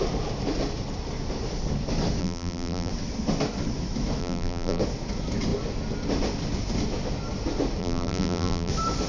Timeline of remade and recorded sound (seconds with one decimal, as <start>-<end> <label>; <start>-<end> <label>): 0.0-2.2 recorded; 2.2-2.9 remade; 2.9-4.2 recorded; 4.2-4.8 remade; 4.8-7.8 recorded; 7.8-8.7 remade; 8.7-9.1 recorded